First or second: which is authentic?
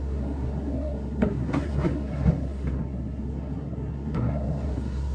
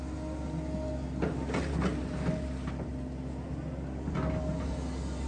second